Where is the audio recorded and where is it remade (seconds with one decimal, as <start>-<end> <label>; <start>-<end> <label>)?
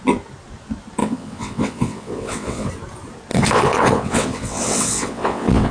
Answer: 0.0-1.0 recorded; 1.0-2.7 remade; 2.7-3.3 recorded; 3.3-5.7 remade